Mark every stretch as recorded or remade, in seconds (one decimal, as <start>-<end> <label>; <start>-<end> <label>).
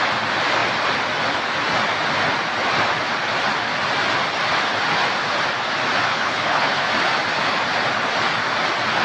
0.0-6.1 recorded; 6.1-6.9 remade; 6.9-9.0 recorded